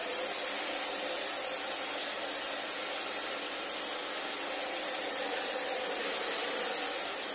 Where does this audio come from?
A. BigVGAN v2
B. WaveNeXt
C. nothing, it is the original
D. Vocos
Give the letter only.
C